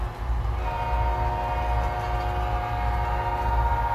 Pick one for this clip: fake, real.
real